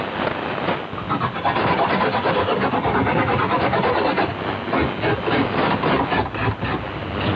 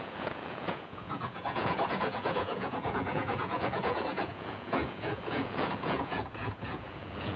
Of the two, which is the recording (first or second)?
first